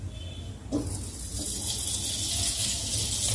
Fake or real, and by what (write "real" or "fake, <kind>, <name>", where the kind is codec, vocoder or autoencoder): real